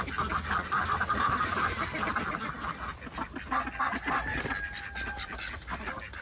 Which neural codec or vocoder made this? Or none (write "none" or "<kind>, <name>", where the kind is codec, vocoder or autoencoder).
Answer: none